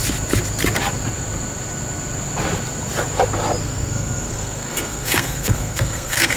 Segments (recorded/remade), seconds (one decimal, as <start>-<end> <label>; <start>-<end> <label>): 0.0-3.6 recorded; 3.6-6.4 remade